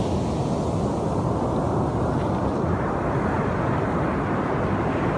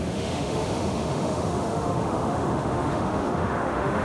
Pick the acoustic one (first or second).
first